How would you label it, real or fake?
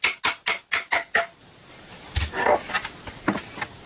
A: real